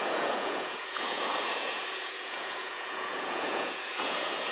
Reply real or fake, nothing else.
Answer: fake